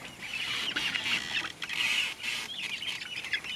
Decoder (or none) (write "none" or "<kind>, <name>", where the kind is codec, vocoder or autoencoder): none